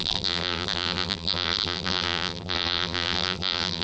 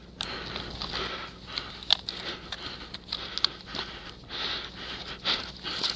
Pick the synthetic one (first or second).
first